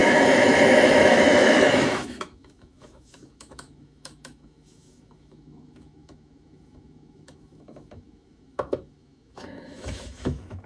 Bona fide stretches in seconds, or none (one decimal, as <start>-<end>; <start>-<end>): none